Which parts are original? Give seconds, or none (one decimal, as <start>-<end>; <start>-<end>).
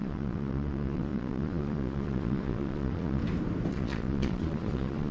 3.2-3.7